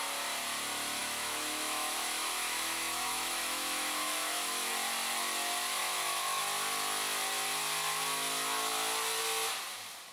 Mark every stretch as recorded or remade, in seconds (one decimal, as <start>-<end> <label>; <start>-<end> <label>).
0.0-1.0 recorded; 1.0-4.7 remade; 4.7-5.8 recorded; 5.8-6.4 remade; 6.4-10.1 recorded